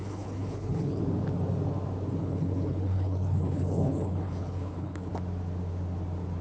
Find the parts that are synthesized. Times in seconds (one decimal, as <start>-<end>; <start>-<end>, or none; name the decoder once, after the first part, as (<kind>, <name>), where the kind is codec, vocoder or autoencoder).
0.0-1.0 (codec, HILCodec); 2.2-5.1